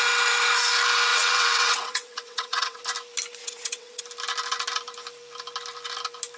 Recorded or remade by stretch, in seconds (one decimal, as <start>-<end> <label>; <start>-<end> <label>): 0.0-1.1 recorded; 1.1-2.8 remade; 2.8-3.4 recorded; 3.4-4.0 remade; 4.0-6.4 recorded